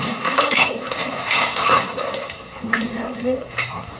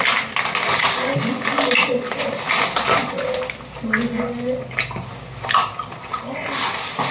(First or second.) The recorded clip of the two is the second